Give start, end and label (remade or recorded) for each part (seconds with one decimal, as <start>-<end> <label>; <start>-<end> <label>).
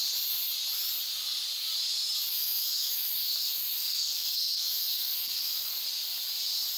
0.0-2.3 recorded; 2.3-5.8 remade; 5.8-6.8 recorded